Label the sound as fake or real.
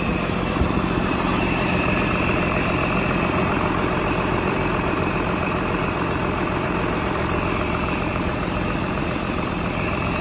fake